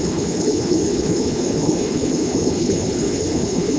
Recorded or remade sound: remade